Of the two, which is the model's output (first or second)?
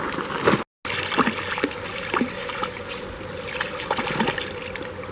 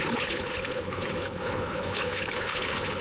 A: second